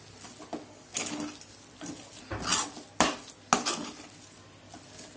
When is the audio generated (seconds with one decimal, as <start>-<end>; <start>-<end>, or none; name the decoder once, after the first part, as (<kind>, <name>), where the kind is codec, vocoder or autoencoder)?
none